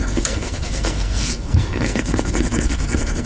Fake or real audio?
fake